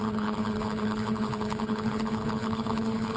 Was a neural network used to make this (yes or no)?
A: yes